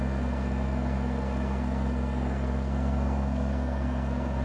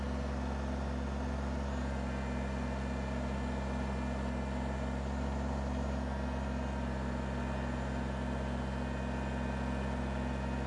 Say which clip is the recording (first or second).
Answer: second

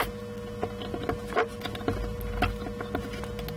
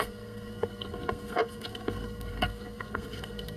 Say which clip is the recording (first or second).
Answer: first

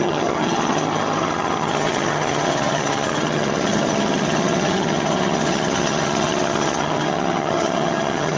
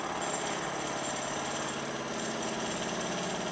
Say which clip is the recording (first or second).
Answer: second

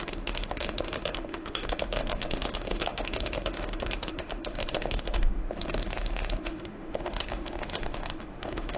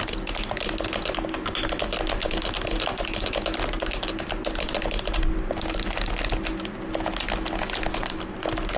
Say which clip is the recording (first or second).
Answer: second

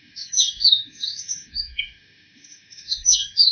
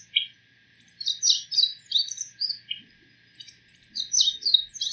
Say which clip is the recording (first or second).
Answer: second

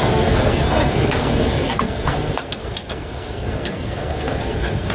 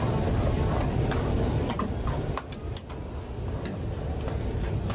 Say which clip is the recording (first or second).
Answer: second